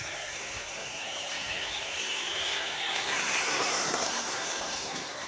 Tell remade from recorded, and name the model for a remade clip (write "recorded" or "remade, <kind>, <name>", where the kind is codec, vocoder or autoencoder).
remade, codec, SNAC